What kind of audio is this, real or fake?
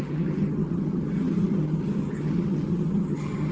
fake